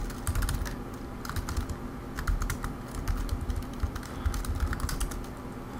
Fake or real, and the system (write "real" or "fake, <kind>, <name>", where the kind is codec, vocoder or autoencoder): real